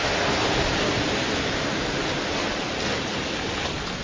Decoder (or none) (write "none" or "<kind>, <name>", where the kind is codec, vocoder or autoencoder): none